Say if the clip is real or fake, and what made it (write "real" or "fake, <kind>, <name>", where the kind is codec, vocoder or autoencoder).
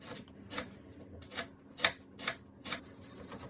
real